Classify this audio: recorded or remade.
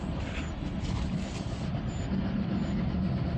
recorded